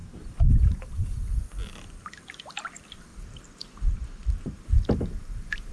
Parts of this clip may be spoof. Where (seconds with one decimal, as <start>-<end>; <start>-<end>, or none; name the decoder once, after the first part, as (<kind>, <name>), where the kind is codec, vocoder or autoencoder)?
0.0-1.4 (vocoder, BigVGAN v2); 3.1-5.7